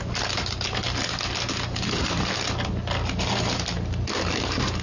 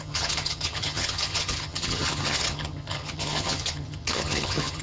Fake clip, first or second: second